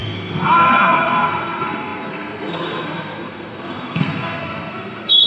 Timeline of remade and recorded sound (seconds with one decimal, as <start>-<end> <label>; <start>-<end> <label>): 0.0-5.3 remade